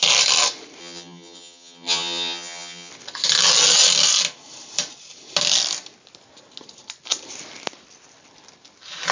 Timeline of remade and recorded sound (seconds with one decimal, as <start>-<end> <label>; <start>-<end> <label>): 0.0-0.8 recorded; 0.8-2.9 remade; 2.9-9.1 recorded